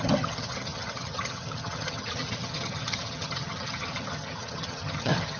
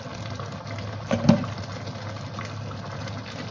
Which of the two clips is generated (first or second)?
first